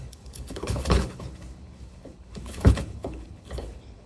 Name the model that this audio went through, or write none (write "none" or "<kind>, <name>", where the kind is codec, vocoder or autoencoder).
codec, HILCodec